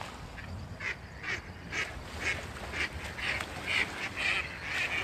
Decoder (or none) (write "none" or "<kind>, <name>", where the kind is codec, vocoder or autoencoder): none